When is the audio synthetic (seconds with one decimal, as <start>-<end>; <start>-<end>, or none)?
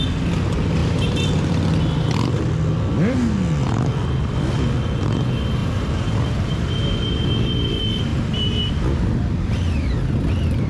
0.8-1.5; 5.6-6.5; 8.1-8.7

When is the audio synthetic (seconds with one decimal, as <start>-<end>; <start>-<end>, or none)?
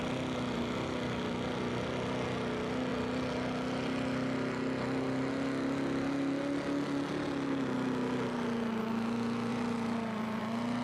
9.5-10.4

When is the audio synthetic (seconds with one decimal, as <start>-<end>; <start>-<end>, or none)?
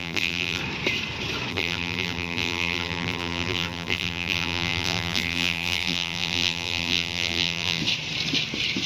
0.0-0.6; 1.5-7.8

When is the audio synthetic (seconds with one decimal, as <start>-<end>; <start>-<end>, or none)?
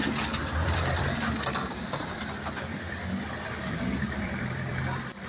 0.0-1.1; 1.6-4.8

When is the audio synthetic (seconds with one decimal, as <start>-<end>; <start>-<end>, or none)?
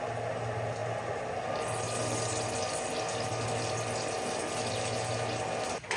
none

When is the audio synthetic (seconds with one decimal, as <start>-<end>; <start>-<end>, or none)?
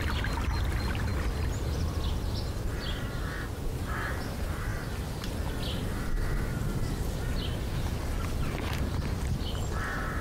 none